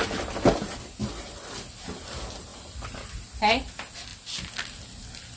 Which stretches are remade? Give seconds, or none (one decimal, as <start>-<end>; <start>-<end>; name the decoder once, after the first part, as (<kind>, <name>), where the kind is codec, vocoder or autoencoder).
1.0-2.0 (vocoder, BigVGAN v2); 2.5-3.4